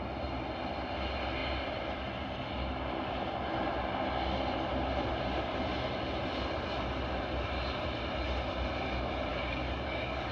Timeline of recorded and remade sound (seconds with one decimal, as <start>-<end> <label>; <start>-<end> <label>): 0.0-9.3 recorded; 9.3-10.3 remade